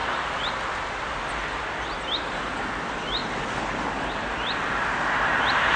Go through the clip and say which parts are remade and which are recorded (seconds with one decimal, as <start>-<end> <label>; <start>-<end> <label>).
0.0-5.8 recorded